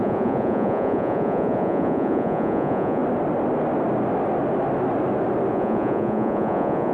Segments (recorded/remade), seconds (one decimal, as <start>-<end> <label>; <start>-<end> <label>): 0.0-3.0 remade; 3.0-5.5 recorded; 5.5-6.9 remade